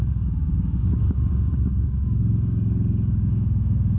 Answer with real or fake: fake